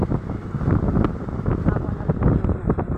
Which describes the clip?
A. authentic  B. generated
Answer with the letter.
A